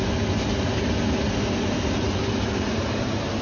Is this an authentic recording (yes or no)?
yes